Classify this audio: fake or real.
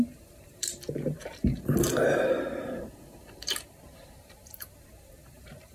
fake